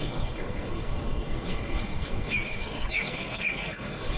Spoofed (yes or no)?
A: yes